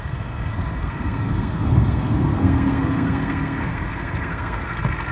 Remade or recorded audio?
remade